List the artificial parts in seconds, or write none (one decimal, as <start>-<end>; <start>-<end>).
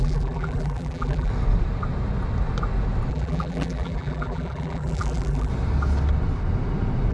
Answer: 0.0-1.3; 3.1-5.5